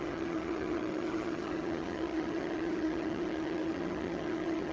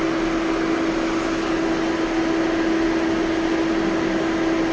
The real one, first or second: second